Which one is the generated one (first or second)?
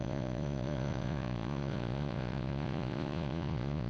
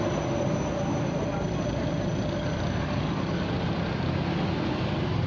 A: first